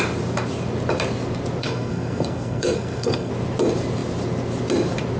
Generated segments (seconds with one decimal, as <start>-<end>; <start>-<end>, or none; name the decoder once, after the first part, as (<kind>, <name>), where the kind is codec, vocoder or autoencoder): 1.6-3.3 (codec, SNAC)